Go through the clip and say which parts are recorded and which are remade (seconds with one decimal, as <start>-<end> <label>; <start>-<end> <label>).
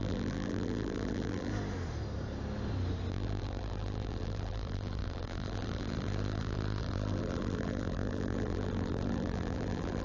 0.0-1.5 remade; 1.5-3.1 recorded; 3.1-10.0 remade